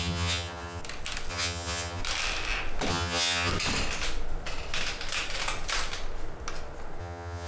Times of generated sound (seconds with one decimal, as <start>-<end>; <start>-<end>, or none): 0.0-0.8; 1.3-2.0; 2.9-3.5; 7.0-7.5